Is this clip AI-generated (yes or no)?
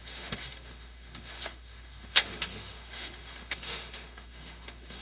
yes